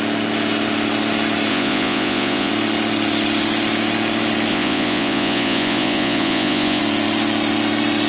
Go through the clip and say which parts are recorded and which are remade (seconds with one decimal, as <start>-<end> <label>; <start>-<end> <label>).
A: 0.0-1.5 recorded; 1.5-2.5 remade; 2.5-4.5 recorded; 4.5-6.8 remade; 6.8-8.1 recorded